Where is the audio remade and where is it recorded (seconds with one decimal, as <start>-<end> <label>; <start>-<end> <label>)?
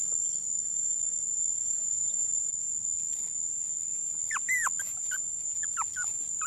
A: 0.0-1.6 recorded; 1.6-2.3 remade; 2.3-6.5 recorded